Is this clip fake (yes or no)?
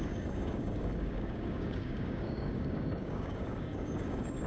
yes